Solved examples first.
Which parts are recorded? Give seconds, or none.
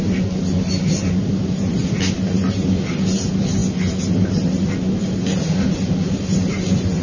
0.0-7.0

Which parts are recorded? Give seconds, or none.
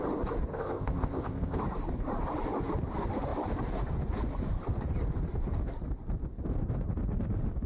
0.0-0.5; 1.6-7.7